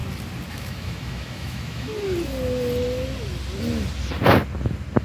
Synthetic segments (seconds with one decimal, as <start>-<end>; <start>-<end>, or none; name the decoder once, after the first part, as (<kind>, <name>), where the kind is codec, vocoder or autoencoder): 0.5-1.9 (autoencoder, DAC-VAE)